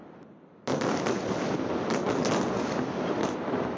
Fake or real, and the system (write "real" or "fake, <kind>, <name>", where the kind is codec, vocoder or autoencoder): real